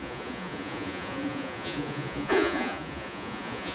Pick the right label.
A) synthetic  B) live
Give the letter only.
A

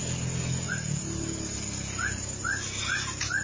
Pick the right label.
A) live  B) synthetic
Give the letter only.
A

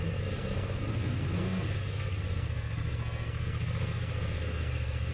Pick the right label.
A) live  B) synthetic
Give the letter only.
B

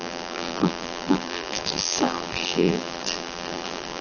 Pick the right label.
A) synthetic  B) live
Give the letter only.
A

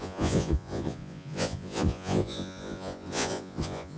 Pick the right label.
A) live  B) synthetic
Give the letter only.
B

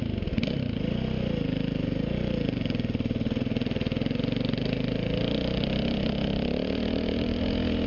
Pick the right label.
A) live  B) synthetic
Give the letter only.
A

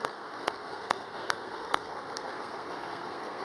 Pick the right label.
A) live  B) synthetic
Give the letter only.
B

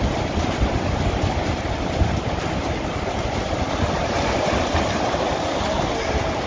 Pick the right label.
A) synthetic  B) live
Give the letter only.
B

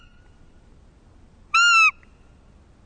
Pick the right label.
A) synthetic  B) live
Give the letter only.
B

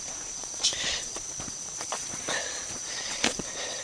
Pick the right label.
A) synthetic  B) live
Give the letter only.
A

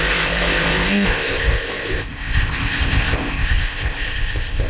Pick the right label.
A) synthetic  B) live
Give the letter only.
A